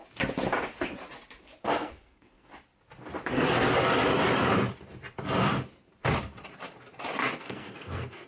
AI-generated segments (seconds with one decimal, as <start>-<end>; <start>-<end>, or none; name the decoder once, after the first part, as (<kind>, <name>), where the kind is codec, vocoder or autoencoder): 1.6-2.5 (codec, SNAC); 7.4-8.3